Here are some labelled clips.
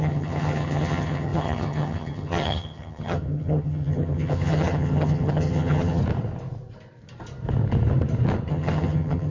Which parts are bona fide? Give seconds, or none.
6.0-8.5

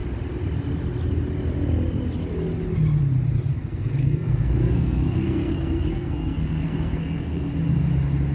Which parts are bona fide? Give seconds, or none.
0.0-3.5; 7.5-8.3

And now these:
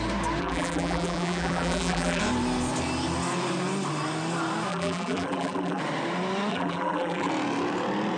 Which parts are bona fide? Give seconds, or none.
0.0-0.4; 2.2-4.7; 5.8-6.5; 7.3-8.2

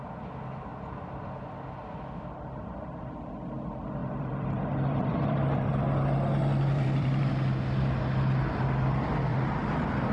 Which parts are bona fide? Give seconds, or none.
0.0-4.0; 7.3-9.3